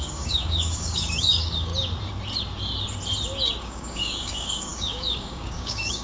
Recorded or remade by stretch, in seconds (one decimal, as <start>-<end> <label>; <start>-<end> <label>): 0.0-1.7 remade; 1.7-3.6 recorded; 3.6-6.0 remade

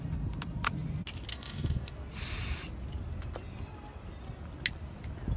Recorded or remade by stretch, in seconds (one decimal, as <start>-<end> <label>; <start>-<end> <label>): 0.0-1.3 recorded; 1.3-1.9 remade; 1.9-5.4 recorded

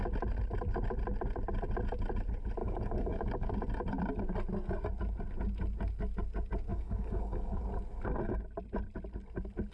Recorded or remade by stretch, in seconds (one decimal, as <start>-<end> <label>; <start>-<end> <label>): 0.0-2.6 recorded; 2.6-3.5 remade; 3.5-6.7 recorded; 6.7-7.6 remade; 7.6-9.7 recorded

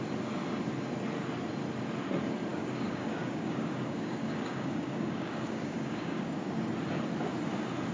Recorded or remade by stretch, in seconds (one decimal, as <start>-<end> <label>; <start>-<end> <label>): 0.0-2.5 recorded; 2.5-6.7 remade; 6.7-7.9 recorded

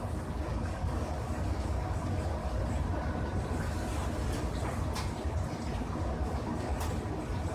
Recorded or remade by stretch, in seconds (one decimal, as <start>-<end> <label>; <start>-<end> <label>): 0.0-2.4 remade; 2.4-6.0 recorded; 6.0-6.7 remade; 6.7-7.5 recorded